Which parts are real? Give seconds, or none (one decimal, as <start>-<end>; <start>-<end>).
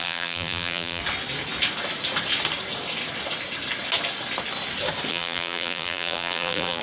1.0-5.1